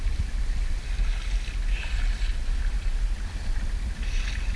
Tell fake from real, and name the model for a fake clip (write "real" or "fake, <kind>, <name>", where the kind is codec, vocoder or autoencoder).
real